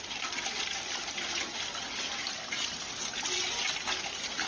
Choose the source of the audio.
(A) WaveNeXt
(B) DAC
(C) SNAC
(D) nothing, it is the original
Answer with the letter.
D